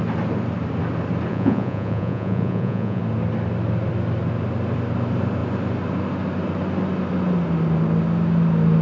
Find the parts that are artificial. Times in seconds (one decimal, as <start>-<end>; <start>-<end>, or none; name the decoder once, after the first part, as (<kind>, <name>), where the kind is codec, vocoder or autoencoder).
1.3-3.0 (vocoder, Vocos)